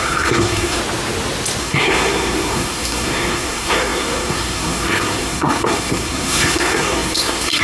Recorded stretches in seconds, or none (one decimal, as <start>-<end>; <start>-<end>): 0.8-1.6

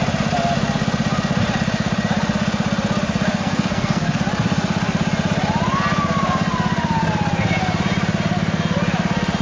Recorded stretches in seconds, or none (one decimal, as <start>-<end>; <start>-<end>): 0.0-3.3; 4.2-9.4